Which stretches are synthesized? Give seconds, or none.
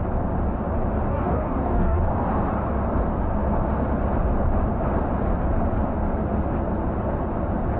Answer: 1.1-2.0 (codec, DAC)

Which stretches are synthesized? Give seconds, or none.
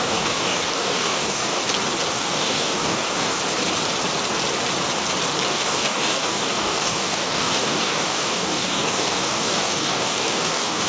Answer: 0.0-1.6 (codec, DAC); 2.1-3.4; 5.5-10.9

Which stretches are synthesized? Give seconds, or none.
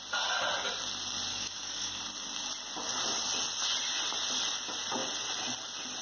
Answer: 1.3-2.0 (codec, DAC)